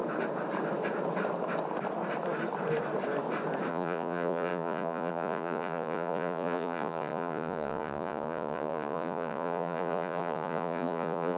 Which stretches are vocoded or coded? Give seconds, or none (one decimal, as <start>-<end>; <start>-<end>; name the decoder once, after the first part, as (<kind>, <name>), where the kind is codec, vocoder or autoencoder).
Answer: 3.7-11.4 (vocoder, Vocos)